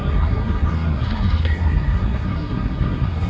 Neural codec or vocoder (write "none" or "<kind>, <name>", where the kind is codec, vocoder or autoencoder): codec, SNAC